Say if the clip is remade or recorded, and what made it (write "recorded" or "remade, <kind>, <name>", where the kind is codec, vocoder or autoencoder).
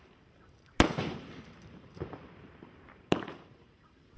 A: remade, vocoder, BigVGAN v2